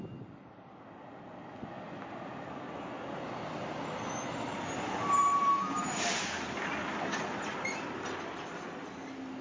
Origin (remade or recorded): recorded